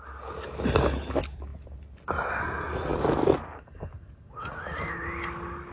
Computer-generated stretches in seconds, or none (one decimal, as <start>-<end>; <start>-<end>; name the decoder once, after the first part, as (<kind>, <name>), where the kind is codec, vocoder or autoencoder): none